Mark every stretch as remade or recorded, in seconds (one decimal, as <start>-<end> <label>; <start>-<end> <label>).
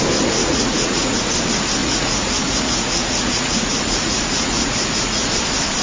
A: 0.0-0.4 recorded; 0.4-1.2 remade; 1.2-1.8 recorded; 1.8-5.3 remade; 5.3-5.8 recorded